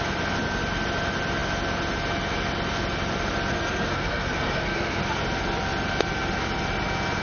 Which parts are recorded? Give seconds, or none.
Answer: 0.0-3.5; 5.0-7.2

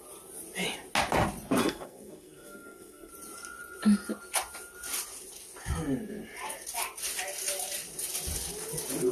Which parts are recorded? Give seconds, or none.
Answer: 0.0-1.6; 3.1-9.1

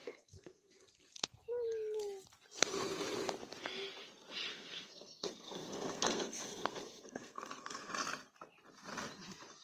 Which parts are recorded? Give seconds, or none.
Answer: 0.7-4.5; 7.9-9.6

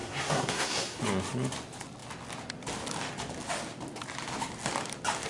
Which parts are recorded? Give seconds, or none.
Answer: 1.0-5.3

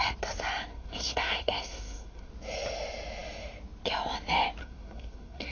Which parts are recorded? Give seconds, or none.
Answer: 0.0-0.7; 2.3-4.6

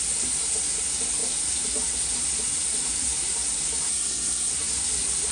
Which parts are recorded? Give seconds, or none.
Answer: 0.0-3.9; 4.5-5.3

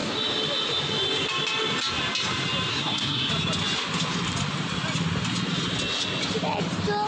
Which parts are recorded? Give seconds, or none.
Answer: 0.0-2.7; 3.3-7.1

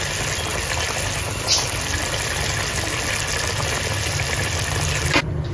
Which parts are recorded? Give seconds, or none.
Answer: 0.0-5.5